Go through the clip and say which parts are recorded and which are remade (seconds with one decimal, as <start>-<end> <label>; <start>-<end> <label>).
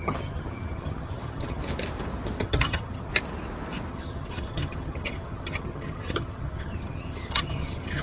0.0-1.6 remade; 1.6-2.4 recorded; 2.4-3.1 remade; 3.1-3.9 recorded; 3.9-8.0 remade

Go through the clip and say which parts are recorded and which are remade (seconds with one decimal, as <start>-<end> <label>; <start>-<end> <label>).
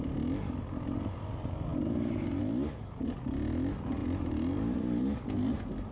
0.0-5.9 recorded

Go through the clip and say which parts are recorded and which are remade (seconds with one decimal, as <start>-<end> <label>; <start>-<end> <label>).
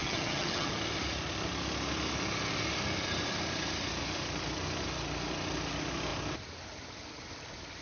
0.0-0.7 remade; 0.7-7.8 recorded